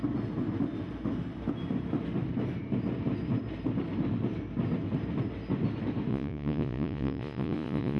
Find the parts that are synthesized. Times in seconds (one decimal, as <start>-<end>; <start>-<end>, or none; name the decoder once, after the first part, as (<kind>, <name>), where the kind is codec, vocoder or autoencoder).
6.1-8.0 (vocoder, Vocos)